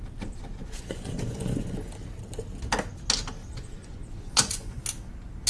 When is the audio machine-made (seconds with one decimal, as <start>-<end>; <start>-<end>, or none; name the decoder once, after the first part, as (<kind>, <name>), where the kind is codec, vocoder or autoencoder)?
0.6-1.9 (vocoder, Vocos); 3.4-4.8

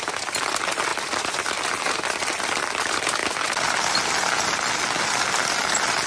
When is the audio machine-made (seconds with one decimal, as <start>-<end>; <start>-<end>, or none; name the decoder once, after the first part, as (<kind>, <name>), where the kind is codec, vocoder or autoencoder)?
none

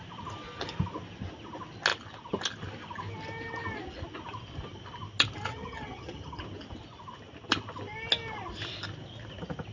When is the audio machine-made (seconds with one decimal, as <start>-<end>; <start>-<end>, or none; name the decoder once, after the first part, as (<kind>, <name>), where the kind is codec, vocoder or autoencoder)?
5.5-6.4 (vocoder, HiFi-GAN)